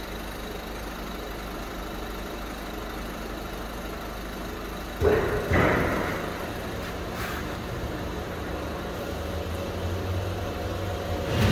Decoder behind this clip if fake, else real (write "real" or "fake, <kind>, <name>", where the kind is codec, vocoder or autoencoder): real